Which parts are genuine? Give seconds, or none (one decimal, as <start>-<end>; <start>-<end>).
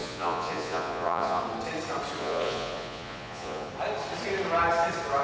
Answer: 1.4-2.2; 3.7-5.2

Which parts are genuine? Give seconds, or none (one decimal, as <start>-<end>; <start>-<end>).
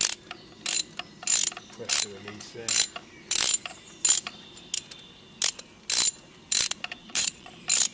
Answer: 0.0-7.0; 7.5-7.9